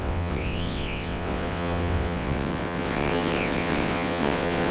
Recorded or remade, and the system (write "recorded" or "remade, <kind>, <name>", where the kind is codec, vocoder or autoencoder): remade, vocoder, WaveNeXt